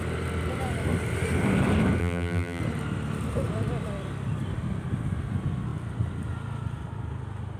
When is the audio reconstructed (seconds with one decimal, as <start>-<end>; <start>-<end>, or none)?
2.0-2.6